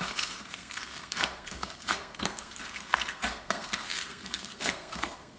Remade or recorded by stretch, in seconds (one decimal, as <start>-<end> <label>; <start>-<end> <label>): 0.0-5.4 remade